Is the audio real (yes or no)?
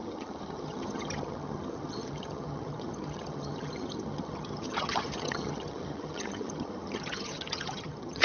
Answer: no